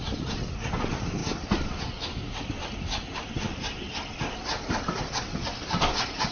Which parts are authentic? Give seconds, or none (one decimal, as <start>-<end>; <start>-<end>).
0.0-6.3